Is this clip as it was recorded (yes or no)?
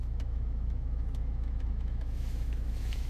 no